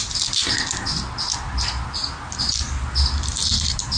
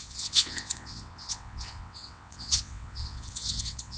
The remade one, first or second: second